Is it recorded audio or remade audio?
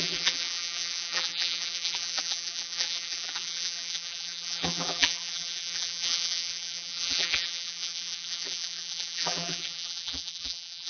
remade